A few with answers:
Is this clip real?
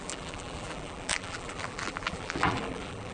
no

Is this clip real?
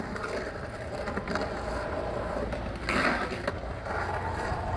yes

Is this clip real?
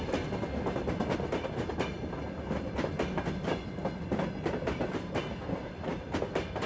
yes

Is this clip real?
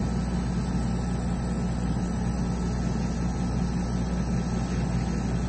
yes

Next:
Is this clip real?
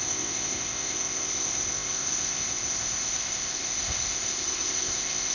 no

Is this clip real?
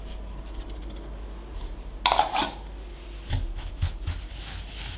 yes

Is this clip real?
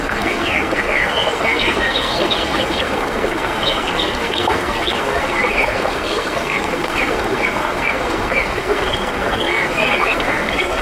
no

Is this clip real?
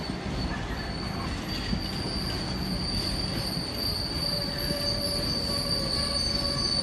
yes